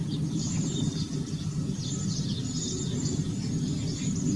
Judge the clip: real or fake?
real